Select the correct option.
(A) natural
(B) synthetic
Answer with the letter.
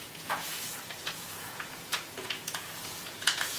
B